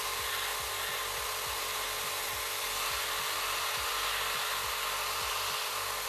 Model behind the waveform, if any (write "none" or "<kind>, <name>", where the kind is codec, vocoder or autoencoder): none